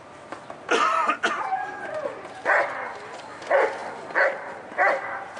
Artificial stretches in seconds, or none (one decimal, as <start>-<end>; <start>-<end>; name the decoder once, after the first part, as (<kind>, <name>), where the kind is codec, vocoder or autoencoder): none